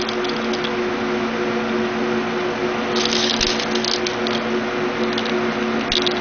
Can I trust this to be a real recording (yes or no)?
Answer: yes